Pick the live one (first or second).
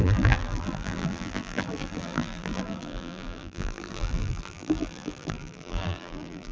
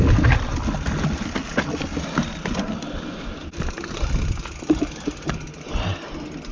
second